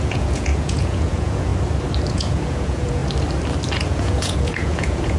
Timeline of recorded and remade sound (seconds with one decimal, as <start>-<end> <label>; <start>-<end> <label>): 0.0-1.5 remade; 1.5-2.1 recorded; 2.1-3.0 remade; 3.0-3.8 recorded; 3.8-5.2 remade